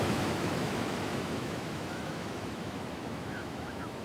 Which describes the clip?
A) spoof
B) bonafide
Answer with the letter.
A